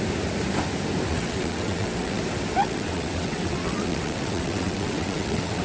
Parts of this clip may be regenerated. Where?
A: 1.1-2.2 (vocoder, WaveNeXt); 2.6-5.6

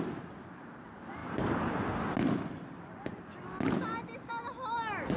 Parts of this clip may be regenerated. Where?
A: none

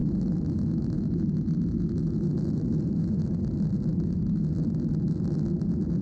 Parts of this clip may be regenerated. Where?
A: 0.0-3.4 (autoencoder, DAC-VAE); 3.9-4.4

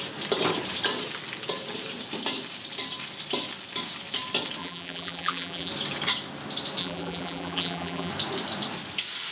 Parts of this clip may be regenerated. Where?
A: 4.6-5.7 (vocoder, BigVGAN v2); 6.8-8.1